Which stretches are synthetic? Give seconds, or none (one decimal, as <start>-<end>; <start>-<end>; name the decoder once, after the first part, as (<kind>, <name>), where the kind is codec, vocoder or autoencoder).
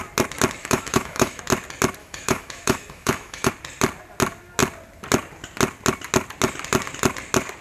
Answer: 0.6-1.4 (autoencoder, DAC-VAE); 2.0-3.5